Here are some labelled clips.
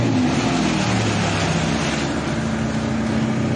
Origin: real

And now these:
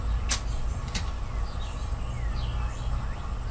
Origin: real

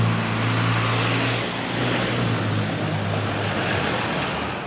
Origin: real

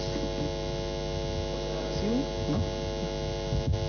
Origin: real